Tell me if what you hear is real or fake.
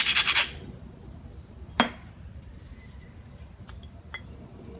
fake